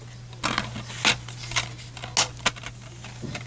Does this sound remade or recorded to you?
recorded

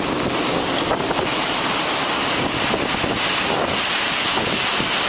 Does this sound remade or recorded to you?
recorded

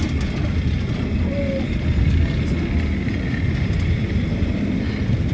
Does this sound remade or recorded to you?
recorded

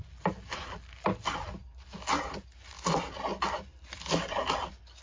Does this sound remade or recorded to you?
recorded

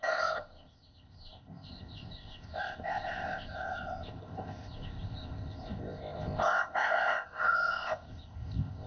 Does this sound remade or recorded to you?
remade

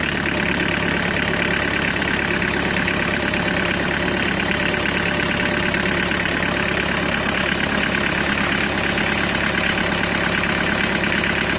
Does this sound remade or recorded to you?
recorded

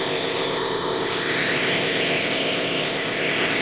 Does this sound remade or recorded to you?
remade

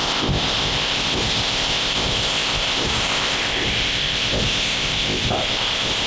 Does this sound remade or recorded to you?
remade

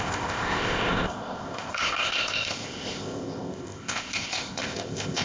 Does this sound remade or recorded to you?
remade